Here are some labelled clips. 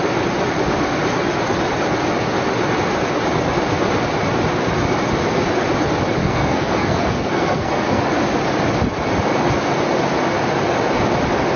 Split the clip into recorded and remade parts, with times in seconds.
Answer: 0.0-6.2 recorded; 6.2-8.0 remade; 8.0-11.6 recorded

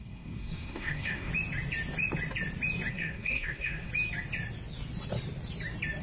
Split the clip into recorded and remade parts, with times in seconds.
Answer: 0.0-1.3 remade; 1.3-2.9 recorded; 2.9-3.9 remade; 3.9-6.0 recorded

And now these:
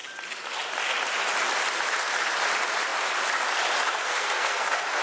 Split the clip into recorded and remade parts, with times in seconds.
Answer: 0.0-4.0 recorded; 4.0-5.0 remade